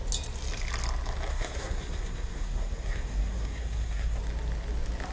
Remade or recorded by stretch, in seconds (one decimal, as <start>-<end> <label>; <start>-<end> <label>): 0.0-1.3 recorded; 1.3-4.2 remade; 4.2-5.1 recorded